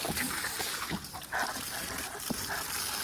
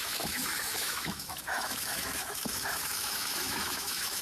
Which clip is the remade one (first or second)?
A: second